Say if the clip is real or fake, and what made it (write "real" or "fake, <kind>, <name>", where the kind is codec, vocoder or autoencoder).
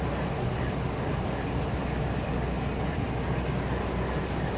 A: real